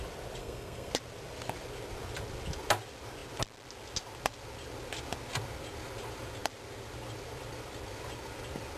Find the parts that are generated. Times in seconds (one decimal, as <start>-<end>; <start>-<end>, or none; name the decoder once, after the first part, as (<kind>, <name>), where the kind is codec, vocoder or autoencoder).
0.4-0.9 (codec, SNAC)